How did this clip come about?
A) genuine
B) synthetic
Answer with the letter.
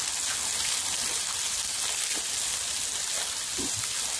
A